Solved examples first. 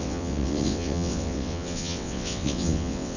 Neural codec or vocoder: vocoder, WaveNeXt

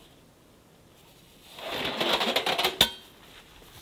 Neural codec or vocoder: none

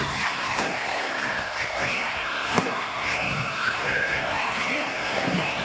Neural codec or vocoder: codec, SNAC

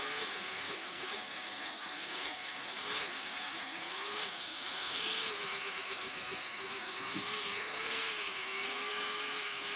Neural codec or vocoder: codec, SNAC